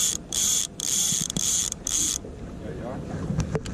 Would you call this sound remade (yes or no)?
yes